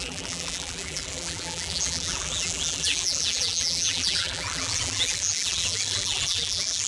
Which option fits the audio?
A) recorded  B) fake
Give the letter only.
B